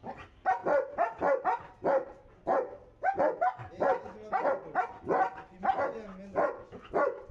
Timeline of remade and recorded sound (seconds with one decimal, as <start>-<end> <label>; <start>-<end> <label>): 0.0-7.3 recorded